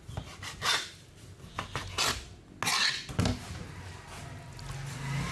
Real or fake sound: real